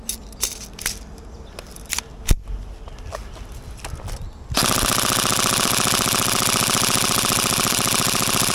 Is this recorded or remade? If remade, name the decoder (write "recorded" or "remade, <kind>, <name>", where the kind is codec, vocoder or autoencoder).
recorded